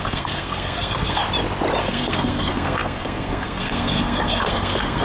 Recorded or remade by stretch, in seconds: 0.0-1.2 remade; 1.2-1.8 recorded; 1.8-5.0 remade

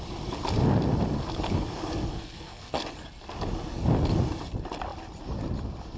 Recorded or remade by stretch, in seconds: 0.0-2.1 recorded; 2.1-2.8 remade; 2.8-6.0 recorded

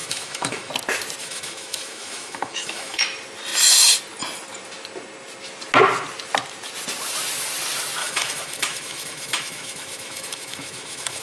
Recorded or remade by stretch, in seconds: 0.0-0.7 remade; 0.7-1.2 recorded; 1.2-3.0 remade; 3.0-8.0 recorded; 8.0-11.2 remade

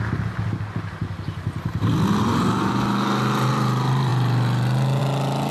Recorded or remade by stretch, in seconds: 0.0-5.5 recorded